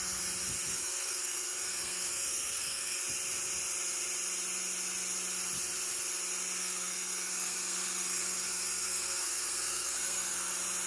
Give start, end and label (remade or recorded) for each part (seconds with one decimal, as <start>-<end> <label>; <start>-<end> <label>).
0.0-0.7 recorded; 0.7-3.0 remade; 3.0-6.6 recorded; 6.6-10.5 remade; 10.5-10.9 recorded